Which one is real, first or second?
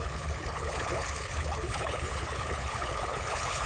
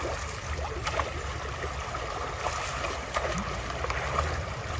second